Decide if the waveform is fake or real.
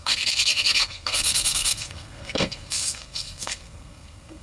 fake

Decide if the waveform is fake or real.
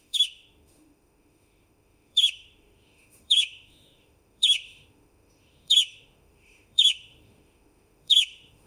fake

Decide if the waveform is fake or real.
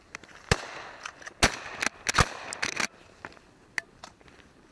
real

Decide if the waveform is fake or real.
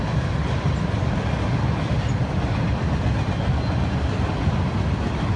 real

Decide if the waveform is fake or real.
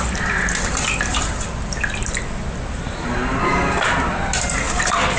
real